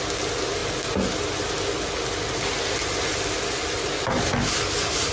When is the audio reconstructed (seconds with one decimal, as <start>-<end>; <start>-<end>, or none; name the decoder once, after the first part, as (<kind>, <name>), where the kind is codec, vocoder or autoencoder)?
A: none